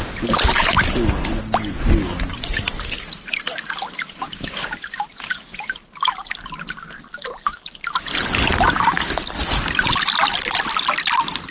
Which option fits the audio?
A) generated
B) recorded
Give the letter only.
B